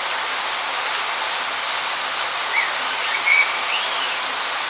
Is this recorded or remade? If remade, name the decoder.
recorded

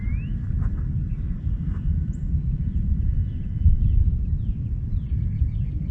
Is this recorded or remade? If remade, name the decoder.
remade, vocoder, BigVGAN v2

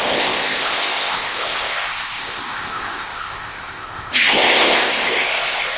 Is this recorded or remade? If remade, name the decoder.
remade, codec, ZipCodec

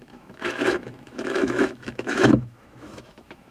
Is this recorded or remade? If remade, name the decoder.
remade, autoencoder, DAC-VAE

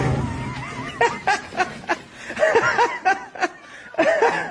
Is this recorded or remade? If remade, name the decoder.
recorded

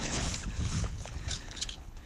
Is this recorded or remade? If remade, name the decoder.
remade, codec, HILCodec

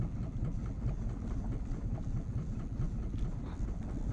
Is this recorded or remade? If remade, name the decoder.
recorded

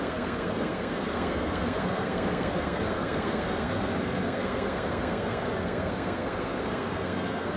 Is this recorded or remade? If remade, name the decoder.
remade, codec, SNAC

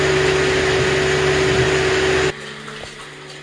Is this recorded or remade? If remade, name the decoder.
recorded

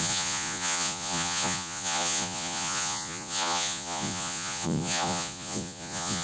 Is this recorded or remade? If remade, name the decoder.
remade, vocoder, Vocos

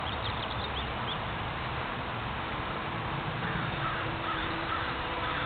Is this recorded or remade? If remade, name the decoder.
remade, vocoder, BigVGAN v2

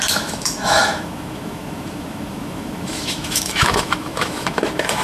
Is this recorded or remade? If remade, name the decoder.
remade, autoencoder, DAC-VAE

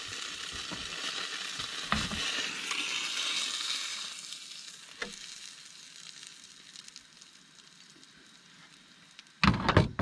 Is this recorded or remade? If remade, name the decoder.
recorded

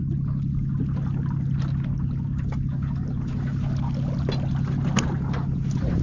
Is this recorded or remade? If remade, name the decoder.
recorded